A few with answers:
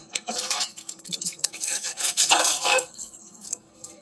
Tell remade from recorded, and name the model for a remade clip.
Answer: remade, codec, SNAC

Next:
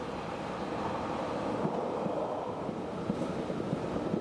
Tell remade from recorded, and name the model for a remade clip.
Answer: recorded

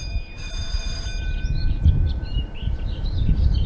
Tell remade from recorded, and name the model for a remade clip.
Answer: remade, vocoder, BigVGAN v2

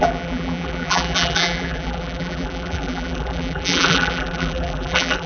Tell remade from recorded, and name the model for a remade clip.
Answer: remade, vocoder, BigVGAN v2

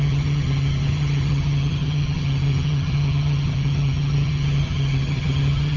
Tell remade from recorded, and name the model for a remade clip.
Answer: remade, vocoder, HiFi-GAN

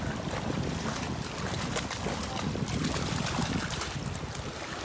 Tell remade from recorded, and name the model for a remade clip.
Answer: recorded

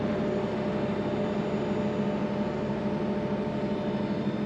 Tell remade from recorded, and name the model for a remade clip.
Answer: recorded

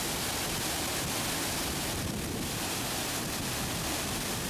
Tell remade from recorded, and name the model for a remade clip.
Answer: recorded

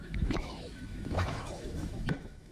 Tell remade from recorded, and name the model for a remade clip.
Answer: remade, autoencoder, DAC-VAE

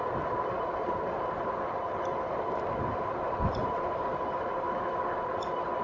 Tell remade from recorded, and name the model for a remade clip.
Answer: recorded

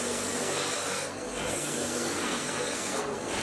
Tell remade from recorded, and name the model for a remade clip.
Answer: remade, codec, SNAC